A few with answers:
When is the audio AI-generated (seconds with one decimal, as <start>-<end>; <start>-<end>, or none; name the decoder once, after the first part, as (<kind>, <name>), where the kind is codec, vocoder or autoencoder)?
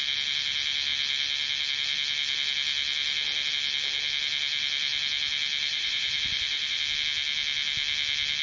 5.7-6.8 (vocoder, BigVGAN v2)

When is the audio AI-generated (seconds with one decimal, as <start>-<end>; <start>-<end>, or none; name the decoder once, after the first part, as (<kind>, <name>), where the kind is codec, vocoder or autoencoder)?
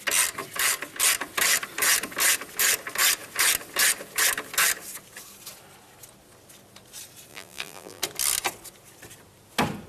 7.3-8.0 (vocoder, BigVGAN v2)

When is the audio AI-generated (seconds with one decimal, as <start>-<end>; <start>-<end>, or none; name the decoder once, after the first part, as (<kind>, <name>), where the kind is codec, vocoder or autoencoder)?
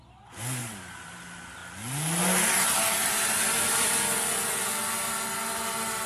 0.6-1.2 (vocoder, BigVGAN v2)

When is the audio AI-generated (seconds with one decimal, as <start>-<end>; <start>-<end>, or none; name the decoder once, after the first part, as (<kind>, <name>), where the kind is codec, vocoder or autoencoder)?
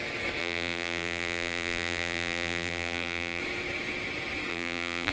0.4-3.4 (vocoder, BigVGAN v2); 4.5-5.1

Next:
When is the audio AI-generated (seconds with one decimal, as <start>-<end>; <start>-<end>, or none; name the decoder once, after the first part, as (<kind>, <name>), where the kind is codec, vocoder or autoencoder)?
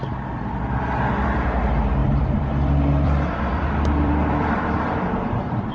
2.0-5.7 (vocoder, BigVGAN v2)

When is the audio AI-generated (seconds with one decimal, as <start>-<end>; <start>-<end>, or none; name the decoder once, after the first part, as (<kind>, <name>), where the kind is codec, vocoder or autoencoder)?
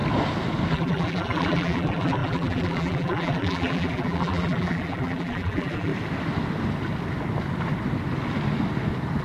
0.7-5.9 (vocoder, BigVGAN v2)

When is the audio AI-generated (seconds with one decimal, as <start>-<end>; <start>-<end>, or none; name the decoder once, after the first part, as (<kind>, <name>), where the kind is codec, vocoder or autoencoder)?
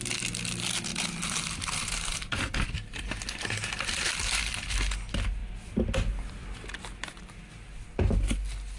0.9-2.6 (vocoder, BigVGAN v2); 4.2-4.8